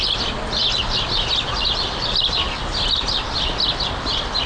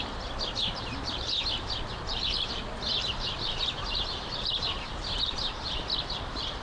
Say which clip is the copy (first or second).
second